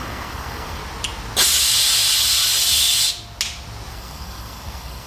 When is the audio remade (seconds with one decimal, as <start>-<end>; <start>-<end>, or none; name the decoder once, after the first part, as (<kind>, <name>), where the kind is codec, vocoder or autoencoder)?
0.0-0.8 (codec, SNAC); 3.9-5.1